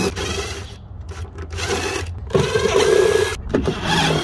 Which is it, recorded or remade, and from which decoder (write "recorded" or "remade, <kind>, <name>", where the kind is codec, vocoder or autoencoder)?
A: recorded